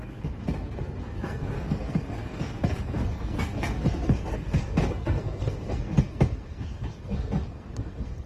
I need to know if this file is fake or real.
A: fake